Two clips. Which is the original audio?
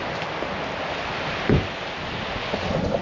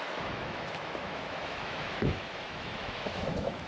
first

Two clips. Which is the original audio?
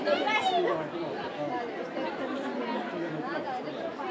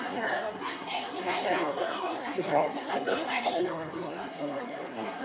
first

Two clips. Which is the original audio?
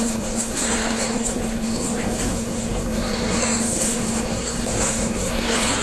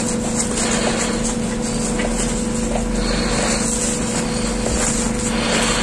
second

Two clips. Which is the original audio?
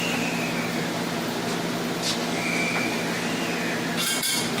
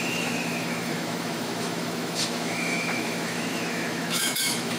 first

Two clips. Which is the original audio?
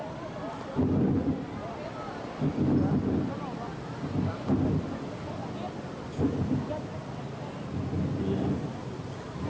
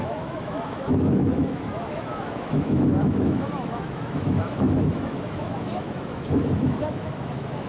first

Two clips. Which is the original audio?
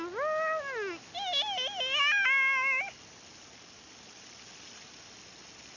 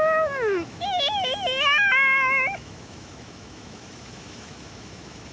first